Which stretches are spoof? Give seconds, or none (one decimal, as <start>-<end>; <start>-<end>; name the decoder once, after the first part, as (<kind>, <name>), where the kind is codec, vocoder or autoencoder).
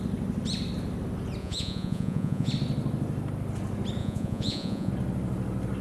1.4-2.5 (vocoder, Vocos); 4.0-4.9